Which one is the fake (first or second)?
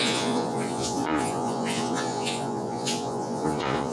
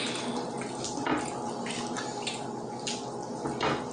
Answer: first